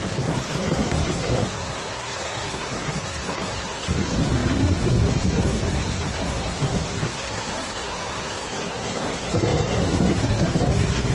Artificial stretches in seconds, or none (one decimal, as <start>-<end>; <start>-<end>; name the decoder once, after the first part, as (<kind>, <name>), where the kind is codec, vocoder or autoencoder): 0.0-11.1 (codec, SNAC)